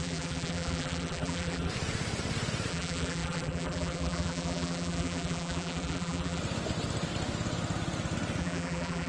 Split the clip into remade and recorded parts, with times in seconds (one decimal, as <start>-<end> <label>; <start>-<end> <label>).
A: 0.0-1.7 remade; 1.7-2.7 recorded; 2.7-6.4 remade; 6.4-8.4 recorded; 8.4-9.1 remade